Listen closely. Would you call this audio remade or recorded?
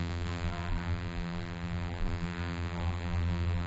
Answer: remade